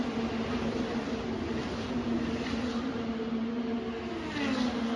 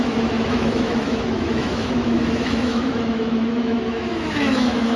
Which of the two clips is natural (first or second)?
first